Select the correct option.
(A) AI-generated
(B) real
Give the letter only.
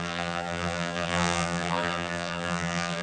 A